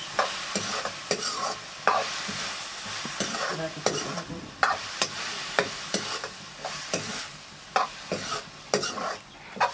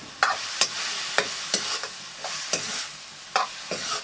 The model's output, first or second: first